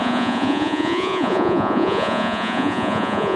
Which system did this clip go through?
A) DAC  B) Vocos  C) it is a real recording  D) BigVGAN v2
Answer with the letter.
B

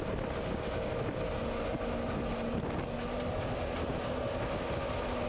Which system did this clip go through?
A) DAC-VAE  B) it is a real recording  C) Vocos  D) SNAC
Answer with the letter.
B